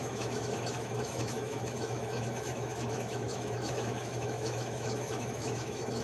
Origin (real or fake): fake